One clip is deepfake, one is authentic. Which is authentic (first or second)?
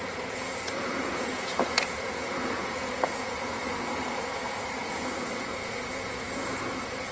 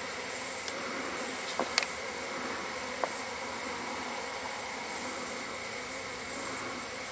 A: second